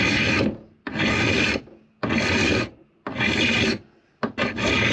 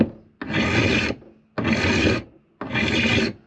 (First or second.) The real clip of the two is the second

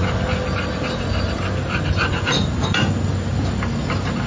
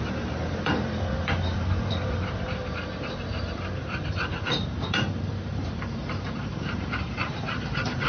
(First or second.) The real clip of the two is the first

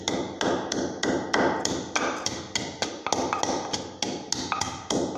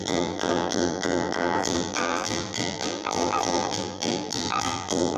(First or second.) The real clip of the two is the first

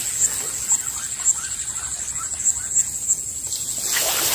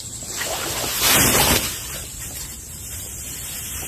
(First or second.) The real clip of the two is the first